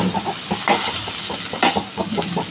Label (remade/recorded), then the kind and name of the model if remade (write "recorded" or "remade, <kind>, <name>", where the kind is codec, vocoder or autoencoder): recorded